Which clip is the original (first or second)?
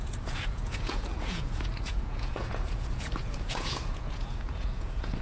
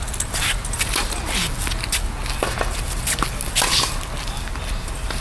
second